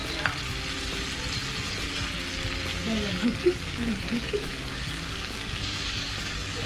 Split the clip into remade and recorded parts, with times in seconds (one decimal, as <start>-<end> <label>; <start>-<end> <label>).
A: 0.0-2.7 recorded; 2.7-6.7 remade